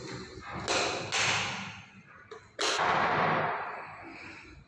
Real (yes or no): yes